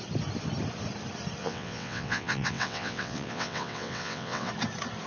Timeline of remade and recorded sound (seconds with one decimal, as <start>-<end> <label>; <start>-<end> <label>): 0.0-1.4 recorded; 1.4-4.5 remade; 4.5-5.1 recorded